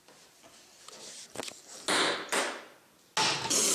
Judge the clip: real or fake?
real